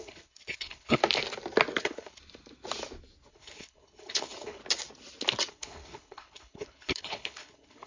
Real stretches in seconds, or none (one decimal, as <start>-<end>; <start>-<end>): 1.0-1.8; 2.2-3.3; 4.6-5.5